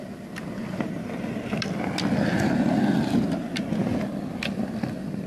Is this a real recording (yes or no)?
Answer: yes